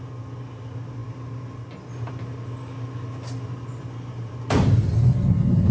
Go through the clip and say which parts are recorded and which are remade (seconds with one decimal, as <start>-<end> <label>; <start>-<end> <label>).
0.0-5.7 recorded